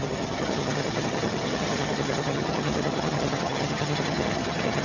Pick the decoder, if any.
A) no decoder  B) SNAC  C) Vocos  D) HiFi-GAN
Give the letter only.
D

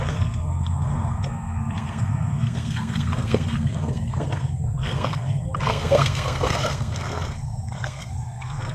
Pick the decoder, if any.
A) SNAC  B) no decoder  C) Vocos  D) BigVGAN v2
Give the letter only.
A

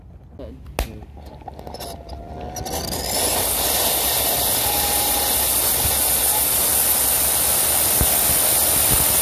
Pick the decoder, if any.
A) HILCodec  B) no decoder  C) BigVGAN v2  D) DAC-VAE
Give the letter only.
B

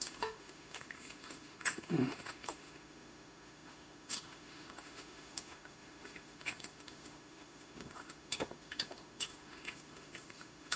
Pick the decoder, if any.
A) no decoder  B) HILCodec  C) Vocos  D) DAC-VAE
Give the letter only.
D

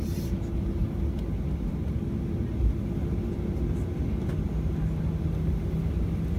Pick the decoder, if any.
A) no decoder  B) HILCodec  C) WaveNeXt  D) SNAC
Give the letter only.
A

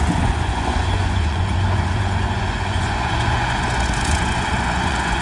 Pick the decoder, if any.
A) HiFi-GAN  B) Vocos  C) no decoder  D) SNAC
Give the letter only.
B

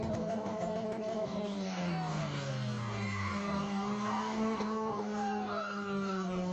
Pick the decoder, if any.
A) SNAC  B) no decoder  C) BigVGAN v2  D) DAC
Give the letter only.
D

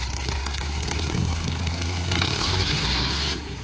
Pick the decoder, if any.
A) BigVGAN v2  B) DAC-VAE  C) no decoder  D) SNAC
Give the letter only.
D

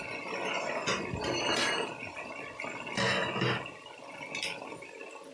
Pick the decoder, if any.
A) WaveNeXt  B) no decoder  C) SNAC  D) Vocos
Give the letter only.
B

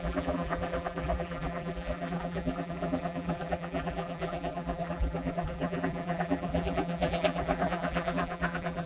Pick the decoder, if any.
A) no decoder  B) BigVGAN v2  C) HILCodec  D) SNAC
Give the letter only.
B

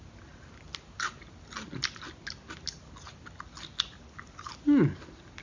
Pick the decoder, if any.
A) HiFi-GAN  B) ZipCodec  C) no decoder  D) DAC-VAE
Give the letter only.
C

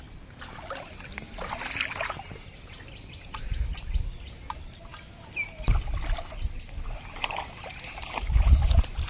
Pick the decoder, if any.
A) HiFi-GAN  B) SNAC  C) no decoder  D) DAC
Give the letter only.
C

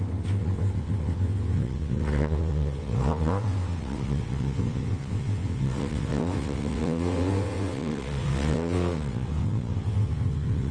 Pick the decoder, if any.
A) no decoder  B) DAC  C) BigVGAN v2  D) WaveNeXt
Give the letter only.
D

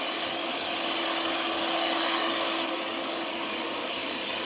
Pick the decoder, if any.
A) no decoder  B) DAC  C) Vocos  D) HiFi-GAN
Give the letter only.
B